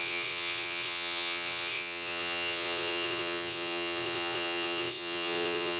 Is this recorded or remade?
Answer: remade